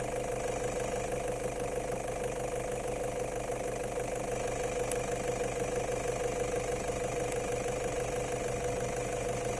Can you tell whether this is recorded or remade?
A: recorded